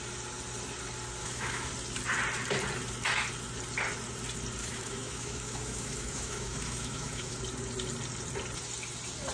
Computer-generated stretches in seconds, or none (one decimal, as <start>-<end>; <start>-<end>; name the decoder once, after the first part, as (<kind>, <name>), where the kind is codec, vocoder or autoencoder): 1.2-1.7 (autoencoder, DAC-VAE); 4.6-7.4